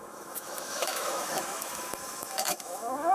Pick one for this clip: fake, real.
fake